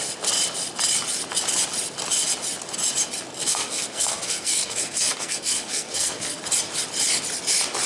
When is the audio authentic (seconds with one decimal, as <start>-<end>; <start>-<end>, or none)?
0.0-3.4; 6.4-7.9